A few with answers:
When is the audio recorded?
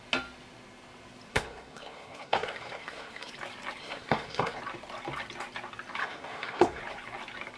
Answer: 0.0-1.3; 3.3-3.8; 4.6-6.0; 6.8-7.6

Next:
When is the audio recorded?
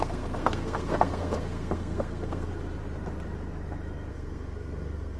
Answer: 2.5-4.1